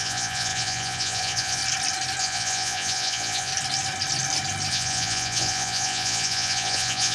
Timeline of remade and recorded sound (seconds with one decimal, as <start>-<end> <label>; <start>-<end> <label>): 0.0-1.6 remade; 1.6-2.2 recorded; 2.2-3.5 remade; 3.5-4.7 recorded; 4.7-7.1 remade